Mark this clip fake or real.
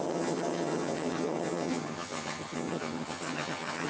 fake